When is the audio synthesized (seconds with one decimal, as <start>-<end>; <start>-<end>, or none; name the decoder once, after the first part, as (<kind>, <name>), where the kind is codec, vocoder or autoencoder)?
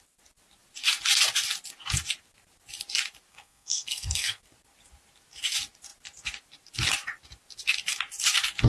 3.3-4.4 (codec, SNAC)